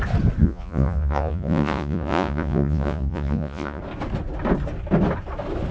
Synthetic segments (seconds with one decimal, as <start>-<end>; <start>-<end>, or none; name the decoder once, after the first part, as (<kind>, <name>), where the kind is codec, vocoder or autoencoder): 0.4-3.8 (vocoder, Vocos)